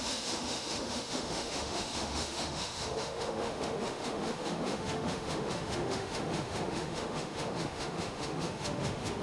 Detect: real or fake fake